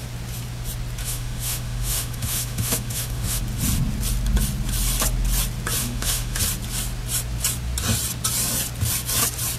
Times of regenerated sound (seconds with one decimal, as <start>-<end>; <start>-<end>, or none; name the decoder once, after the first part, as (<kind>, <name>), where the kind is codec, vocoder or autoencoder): 1.0-3.4 (autoencoder, DAC-VAE); 5.8-6.4

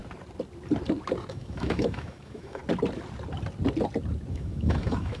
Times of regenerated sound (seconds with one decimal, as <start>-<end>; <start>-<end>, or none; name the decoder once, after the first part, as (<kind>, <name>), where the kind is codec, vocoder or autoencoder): 1.3-2.6 (autoencoder, DAC-VAE); 4.3-5.2

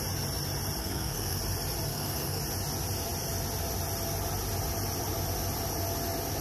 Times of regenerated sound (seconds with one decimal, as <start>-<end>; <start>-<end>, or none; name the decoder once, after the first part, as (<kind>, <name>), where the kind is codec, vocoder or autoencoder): 0.8-1.4 (codec, SNAC); 1.9-2.4

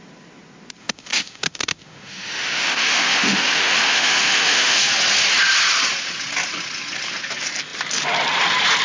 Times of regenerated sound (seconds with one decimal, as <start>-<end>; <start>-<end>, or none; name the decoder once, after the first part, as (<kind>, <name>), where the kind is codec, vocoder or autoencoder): 0.8-4.8 (autoencoder, DAC-VAE)

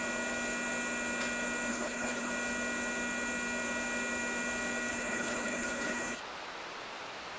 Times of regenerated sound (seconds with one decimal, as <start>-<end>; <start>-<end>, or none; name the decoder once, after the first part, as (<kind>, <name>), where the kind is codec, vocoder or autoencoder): 1.7-2.3 (codec, HILCodec); 4.9-6.2

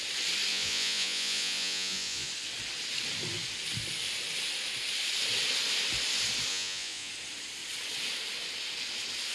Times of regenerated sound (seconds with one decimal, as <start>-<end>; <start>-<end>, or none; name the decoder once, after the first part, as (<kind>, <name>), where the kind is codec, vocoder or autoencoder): 0.5-2.3 (vocoder, Vocos); 6.5-7.1

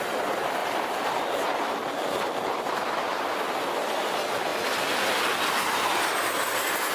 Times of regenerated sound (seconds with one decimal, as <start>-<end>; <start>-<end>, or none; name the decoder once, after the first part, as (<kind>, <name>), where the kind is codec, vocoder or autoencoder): 0.6-1.2 (vocoder, BigVGAN v2); 4.5-5.6